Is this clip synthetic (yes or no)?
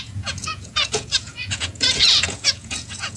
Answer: yes